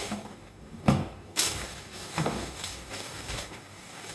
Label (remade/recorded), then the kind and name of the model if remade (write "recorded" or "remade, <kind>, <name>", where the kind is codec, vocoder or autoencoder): remade, codec, DAC